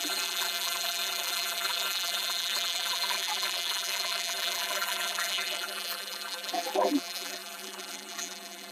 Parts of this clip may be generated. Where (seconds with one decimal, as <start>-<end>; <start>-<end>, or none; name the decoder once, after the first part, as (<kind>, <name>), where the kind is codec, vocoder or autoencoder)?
0.0-8.7 (vocoder, BigVGAN v2)